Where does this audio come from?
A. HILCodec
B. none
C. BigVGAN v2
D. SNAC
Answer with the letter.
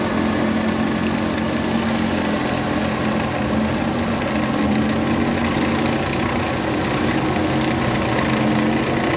B